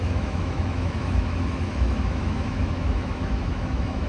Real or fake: fake